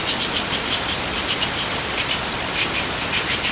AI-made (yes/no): no